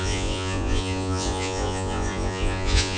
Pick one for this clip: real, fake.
fake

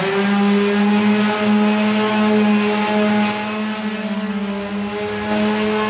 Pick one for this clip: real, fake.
real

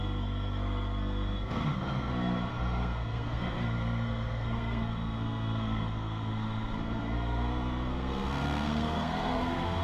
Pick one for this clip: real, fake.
fake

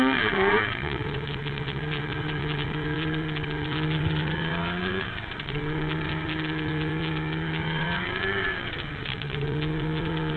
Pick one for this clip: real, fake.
fake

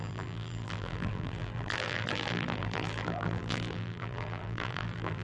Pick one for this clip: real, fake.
fake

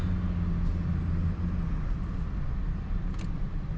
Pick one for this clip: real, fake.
real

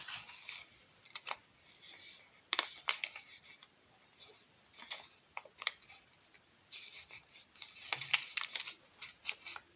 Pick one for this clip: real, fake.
real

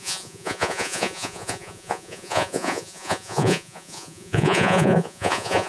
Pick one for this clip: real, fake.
fake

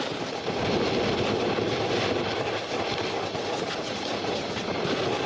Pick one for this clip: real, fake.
real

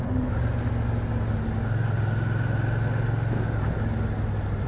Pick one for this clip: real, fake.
real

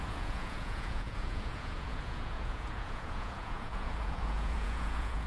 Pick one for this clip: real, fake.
fake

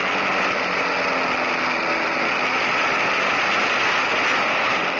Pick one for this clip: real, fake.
real